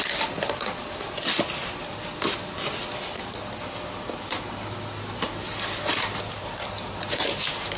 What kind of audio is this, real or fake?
real